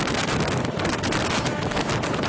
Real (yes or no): yes